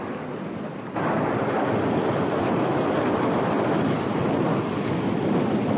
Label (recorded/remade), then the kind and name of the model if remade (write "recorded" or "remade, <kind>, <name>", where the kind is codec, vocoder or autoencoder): recorded